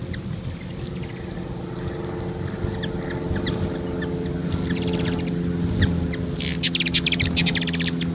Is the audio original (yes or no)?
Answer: yes